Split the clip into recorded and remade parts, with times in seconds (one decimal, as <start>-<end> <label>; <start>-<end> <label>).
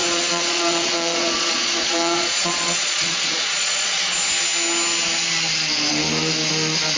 0.0-4.0 remade; 4.0-7.0 recorded